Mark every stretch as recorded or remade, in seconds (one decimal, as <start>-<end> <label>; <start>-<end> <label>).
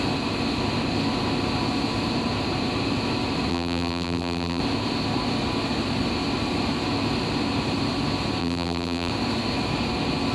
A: 0.0-3.5 recorded; 3.5-4.6 remade; 4.6-8.4 recorded; 8.4-9.1 remade; 9.1-10.3 recorded